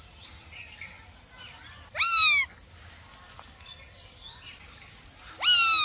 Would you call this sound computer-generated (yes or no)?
no